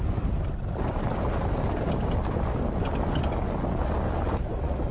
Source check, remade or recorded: recorded